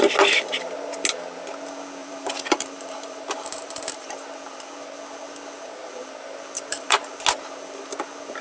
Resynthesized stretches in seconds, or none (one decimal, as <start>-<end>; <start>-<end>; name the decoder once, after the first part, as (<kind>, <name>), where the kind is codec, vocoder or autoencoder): 2.0-4.1 (vocoder, BigVGAN v2); 6.7-7.2